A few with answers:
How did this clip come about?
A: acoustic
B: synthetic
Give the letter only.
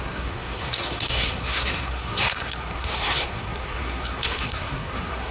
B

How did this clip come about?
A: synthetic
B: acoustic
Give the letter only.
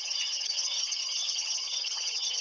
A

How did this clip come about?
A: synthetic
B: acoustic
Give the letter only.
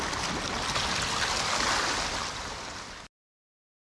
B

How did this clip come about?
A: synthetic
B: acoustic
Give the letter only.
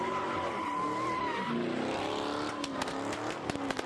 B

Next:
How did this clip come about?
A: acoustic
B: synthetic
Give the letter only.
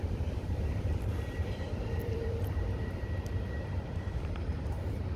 B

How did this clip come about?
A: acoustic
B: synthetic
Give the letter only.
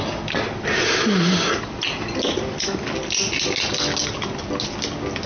A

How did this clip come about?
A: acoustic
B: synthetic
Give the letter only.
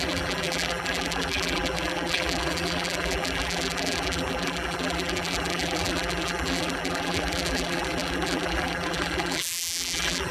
B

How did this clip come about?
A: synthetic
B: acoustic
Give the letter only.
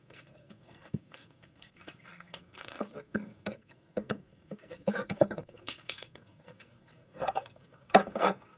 A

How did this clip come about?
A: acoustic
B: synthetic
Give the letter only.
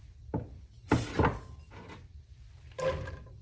A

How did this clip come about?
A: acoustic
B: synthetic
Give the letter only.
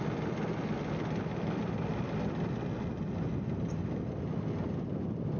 A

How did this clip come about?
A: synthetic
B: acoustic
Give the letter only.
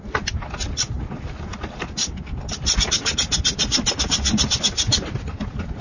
B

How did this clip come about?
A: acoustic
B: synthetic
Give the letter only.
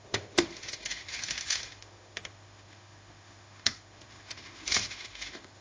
B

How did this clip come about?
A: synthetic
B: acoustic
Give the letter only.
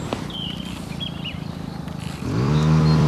A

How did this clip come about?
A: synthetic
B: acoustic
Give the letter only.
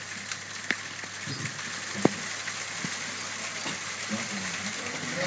B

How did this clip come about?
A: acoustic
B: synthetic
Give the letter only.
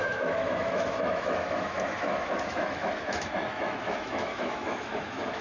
B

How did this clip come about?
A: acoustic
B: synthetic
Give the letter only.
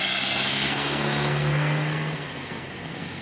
B